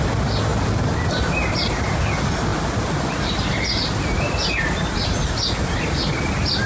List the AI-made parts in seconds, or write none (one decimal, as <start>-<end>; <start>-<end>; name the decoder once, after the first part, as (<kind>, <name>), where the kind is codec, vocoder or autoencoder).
none